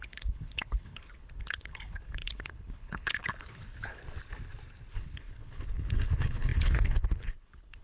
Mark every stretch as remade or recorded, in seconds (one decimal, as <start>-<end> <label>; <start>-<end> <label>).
0.0-4.0 remade; 4.0-4.9 recorded; 4.9-7.8 remade

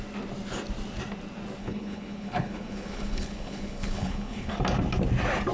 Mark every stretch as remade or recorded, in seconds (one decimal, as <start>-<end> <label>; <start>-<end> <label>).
0.0-1.6 recorded; 1.6-4.5 remade; 4.5-5.5 recorded

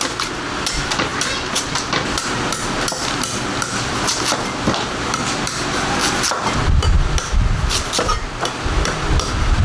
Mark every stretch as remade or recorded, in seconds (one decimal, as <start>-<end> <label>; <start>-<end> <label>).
0.0-9.6 recorded

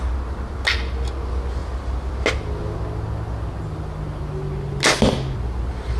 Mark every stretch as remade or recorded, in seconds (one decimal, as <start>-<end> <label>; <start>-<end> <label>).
0.0-6.0 recorded

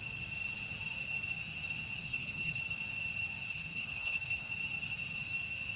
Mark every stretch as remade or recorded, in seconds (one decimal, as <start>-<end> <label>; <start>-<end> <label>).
0.0-2.0 recorded; 2.0-2.6 remade; 2.6-3.5 recorded; 3.5-4.5 remade; 4.5-5.8 recorded

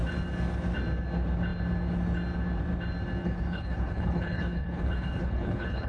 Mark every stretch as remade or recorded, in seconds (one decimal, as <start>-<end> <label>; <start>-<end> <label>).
0.0-3.2 recorded; 3.2-5.9 remade